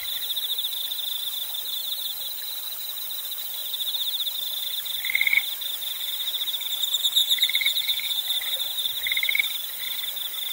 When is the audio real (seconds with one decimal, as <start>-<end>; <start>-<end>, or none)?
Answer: 0.0-7.2; 8.2-10.5